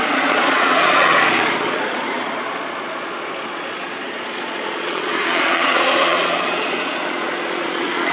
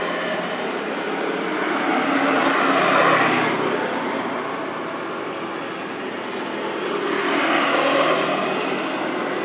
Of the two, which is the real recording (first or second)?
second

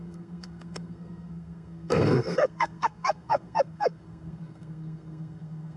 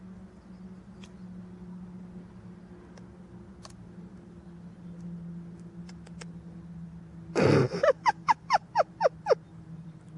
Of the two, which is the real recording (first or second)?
second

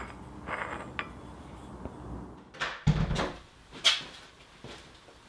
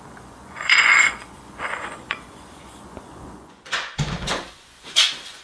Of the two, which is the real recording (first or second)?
first